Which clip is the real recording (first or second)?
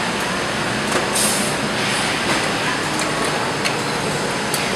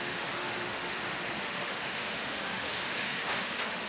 first